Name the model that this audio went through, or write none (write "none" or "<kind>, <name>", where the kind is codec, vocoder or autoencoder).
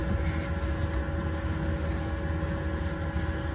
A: none